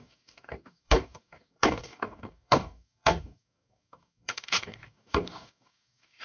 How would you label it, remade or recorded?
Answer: remade